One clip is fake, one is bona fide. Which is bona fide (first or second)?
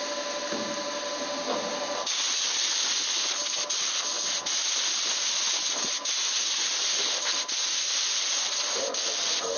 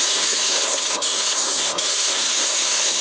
first